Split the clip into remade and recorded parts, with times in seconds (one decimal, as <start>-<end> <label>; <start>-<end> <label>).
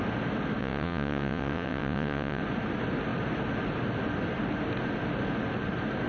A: 0.0-0.6 recorded; 0.6-2.4 remade; 2.4-6.1 recorded